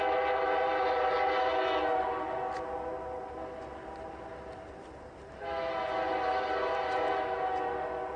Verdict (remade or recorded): recorded